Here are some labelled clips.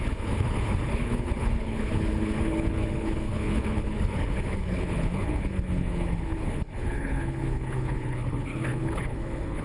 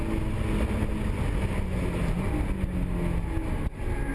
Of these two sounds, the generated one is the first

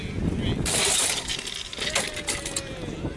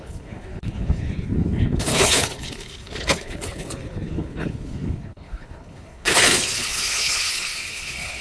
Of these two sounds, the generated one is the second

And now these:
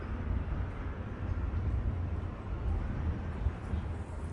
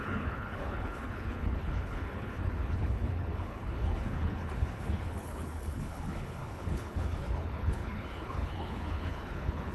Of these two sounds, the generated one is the second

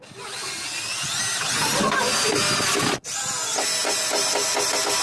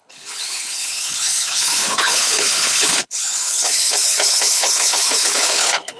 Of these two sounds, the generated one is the second